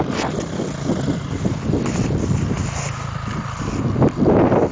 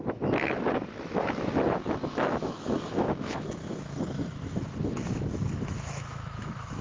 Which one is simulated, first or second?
second